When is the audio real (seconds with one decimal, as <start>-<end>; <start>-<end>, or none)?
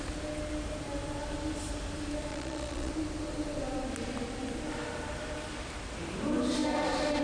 0.0-2.3; 2.9-7.2